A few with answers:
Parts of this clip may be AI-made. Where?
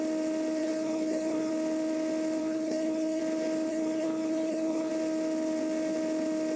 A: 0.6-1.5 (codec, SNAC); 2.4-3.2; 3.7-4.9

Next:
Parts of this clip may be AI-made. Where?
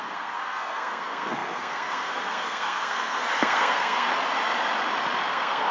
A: 0.0-4.1 (codec, SNAC); 5.3-5.7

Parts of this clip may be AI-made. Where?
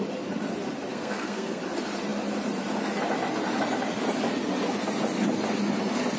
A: 0.9-1.6 (codec, SNAC)